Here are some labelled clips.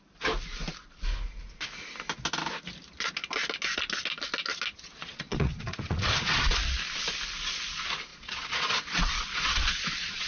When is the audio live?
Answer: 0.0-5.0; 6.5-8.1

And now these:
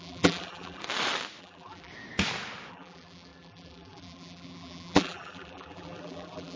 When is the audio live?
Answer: 0.8-1.4; 1.9-2.7

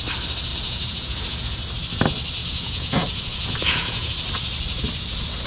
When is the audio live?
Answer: 0.0-0.5; 1.6-2.4; 4.1-5.5

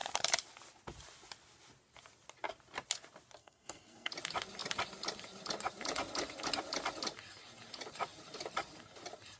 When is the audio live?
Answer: 0.0-3.4; 4.1-9.4

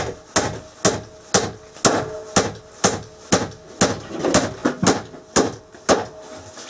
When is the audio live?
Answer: 0.0-6.7

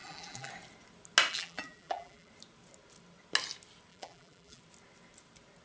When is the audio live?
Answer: 0.5-1.3; 2.3-3.9; 4.6-5.6